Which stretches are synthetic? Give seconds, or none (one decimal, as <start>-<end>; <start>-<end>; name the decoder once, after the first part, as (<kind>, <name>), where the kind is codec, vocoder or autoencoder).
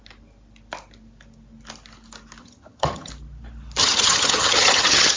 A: 2.4-3.1 (vocoder, HiFi-GAN); 3.8-5.2